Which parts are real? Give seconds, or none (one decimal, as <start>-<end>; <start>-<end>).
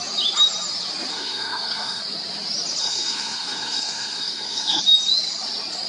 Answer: 0.0-1.1; 2.0-2.8; 4.8-5.9